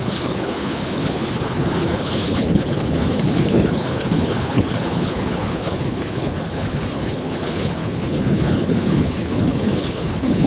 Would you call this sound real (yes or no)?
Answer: no